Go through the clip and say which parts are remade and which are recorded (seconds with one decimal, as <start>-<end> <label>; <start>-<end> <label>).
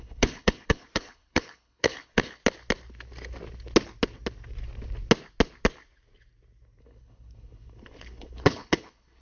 0.0-2.4 remade; 2.4-6.8 recorded; 6.8-9.2 remade